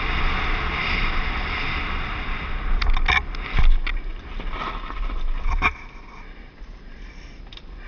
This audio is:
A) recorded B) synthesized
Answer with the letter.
A